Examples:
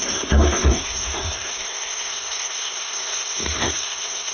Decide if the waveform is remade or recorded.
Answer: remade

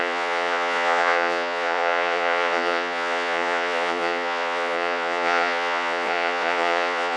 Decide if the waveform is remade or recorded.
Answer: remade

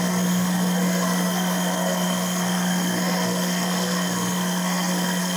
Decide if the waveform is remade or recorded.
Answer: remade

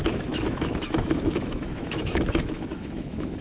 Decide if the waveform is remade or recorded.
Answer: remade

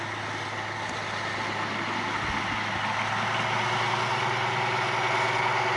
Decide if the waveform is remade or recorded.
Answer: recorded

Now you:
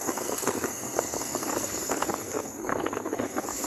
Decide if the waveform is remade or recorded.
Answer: remade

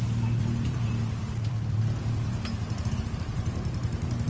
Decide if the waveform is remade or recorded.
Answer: remade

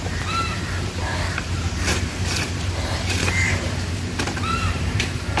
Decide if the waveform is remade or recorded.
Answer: remade